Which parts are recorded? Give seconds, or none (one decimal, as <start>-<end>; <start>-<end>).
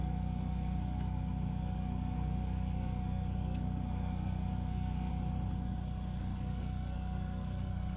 5.1-6.2